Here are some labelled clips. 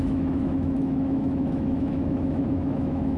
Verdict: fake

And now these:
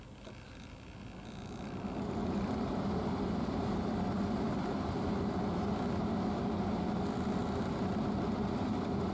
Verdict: real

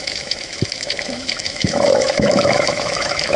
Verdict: fake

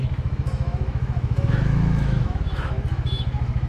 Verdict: fake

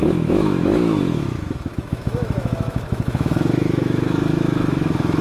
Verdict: fake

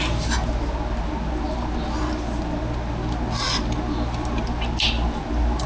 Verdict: real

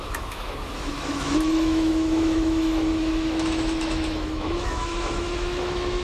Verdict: fake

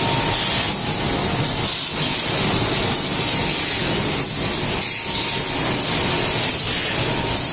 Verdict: real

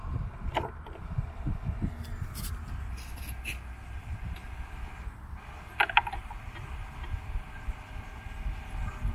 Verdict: real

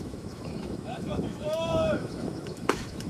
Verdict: fake